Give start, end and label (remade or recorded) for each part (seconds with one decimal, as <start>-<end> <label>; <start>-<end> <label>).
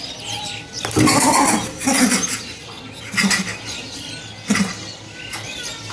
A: 0.0-5.9 recorded